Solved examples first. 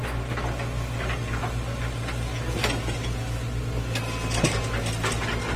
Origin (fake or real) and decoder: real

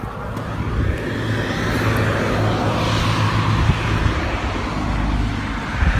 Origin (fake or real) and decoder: real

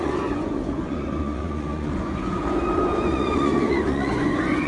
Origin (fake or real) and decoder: fake, vocoder, Vocos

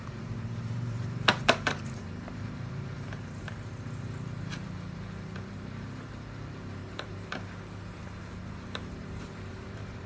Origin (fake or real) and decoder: fake, vocoder, BigVGAN v2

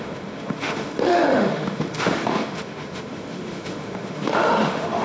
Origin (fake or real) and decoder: fake, autoencoder, DAC-VAE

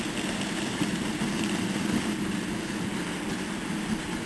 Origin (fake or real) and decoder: real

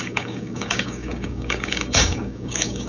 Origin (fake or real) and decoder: fake, codec, DAC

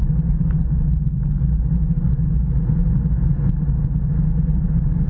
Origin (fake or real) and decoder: real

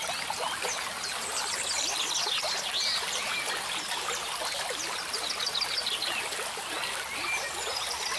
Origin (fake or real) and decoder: real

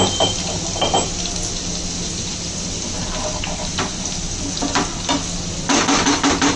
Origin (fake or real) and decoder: real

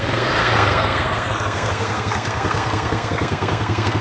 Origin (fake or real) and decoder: fake, codec, SNAC